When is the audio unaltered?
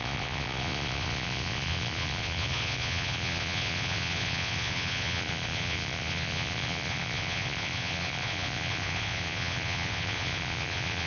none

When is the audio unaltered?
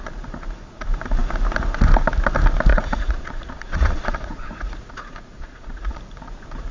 0.0-2.7; 6.0-6.7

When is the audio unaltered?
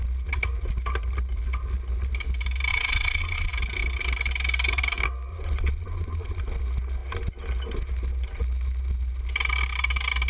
0.0-2.7; 3.5-5.3; 6.4-10.3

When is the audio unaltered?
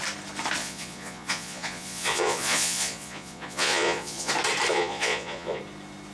0.0-0.6; 4.3-4.7; 5.6-6.1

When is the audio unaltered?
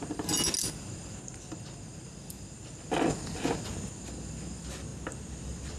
0.0-5.8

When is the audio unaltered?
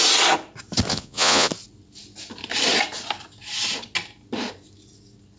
0.0-0.9; 1.5-5.4